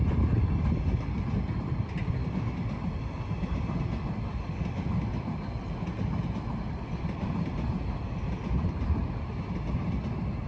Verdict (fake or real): real